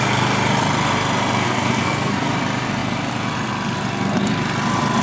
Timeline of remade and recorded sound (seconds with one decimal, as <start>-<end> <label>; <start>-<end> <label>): 0.0-1.4 recorded; 1.4-2.3 remade; 2.3-5.0 recorded